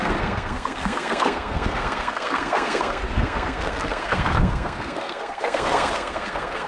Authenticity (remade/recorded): remade